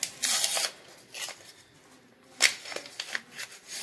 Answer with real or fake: real